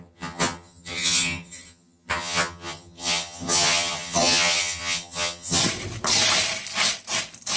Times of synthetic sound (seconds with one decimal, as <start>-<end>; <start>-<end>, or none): 0.0-5.6